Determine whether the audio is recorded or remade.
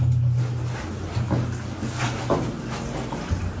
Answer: recorded